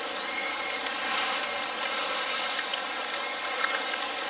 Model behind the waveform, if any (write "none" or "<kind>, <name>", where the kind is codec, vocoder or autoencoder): none